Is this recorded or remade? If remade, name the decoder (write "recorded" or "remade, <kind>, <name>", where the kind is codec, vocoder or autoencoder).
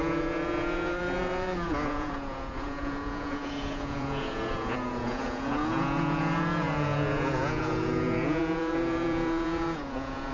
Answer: remade, vocoder, Vocos